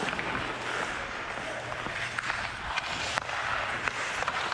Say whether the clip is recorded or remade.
recorded